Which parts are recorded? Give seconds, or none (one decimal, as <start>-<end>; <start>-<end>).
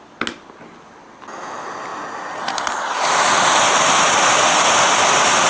0.0-5.5